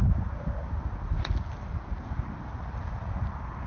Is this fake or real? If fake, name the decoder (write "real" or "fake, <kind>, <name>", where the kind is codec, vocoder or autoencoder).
real